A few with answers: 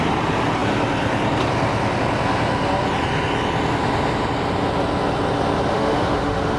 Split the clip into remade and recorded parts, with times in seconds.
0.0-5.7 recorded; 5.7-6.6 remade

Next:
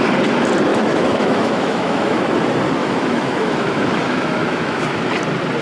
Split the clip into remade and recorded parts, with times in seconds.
0.0-0.7 recorded; 0.7-2.2 remade; 2.2-2.8 recorded; 2.8-5.1 remade; 5.1-5.6 recorded

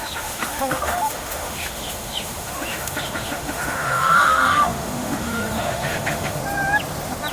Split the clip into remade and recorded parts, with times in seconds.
0.0-6.4 remade; 6.4-7.3 recorded

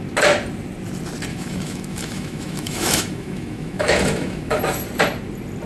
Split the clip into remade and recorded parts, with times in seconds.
0.0-1.3 recorded; 1.3-4.6 remade; 4.6-5.7 recorded